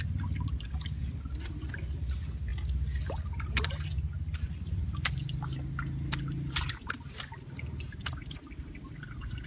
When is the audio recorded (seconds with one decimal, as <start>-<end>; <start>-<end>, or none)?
0.0-9.5